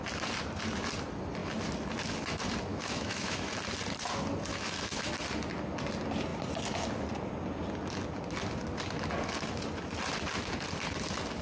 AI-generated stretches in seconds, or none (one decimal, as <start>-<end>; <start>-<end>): 2.7-3.5; 4.5-5.1